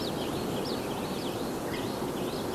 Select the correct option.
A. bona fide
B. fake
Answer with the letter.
A